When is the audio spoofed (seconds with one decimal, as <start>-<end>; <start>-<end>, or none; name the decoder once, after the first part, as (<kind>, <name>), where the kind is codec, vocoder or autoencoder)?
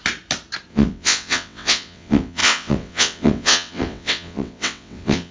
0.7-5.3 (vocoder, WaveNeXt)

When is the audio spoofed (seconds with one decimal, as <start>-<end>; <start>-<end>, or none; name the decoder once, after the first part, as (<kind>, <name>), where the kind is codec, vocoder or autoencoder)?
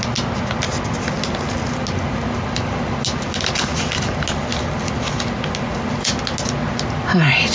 none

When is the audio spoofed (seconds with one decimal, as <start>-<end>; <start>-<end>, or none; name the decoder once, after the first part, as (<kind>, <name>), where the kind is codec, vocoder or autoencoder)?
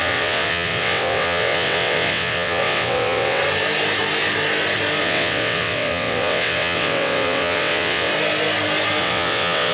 0.0-3.4 (vocoder, WaveNeXt); 5.0-8.1; 9.0-9.7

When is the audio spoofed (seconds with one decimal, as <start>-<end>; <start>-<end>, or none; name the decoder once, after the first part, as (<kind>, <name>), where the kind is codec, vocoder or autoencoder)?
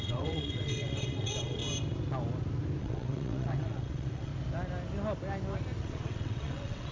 0.0-1.6 (vocoder, WaveNeXt); 2.8-4.3; 5.8-6.9